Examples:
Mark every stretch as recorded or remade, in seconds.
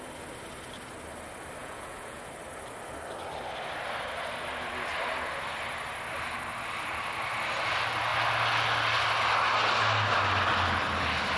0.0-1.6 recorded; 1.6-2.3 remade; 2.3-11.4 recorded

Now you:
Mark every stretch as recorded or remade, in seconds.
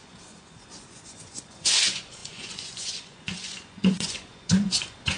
0.0-5.2 remade